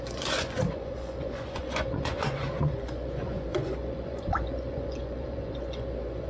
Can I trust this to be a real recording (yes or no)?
no